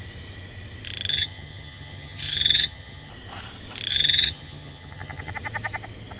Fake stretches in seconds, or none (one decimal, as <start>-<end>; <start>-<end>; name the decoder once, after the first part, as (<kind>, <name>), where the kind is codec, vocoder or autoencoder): 1.1-3.1 (vocoder, HiFi-GAN); 3.9-5.3